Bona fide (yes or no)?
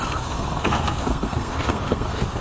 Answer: no